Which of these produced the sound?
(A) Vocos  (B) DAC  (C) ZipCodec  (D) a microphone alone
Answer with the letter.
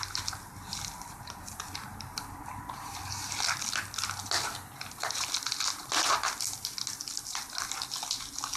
D